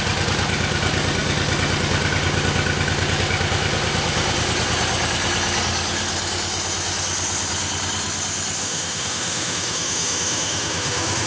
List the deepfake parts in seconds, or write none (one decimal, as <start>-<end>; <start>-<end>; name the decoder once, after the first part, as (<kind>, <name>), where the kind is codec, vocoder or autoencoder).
8.6-11.3 (autoencoder, DAC-VAE)